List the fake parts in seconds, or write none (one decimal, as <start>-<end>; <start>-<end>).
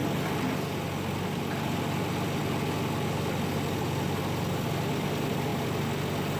none